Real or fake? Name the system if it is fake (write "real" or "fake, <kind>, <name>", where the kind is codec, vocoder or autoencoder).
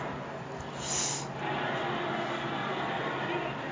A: real